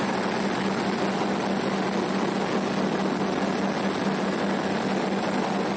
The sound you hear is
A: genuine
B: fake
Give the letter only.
A